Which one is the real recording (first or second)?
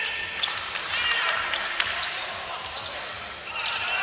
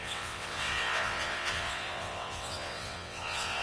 first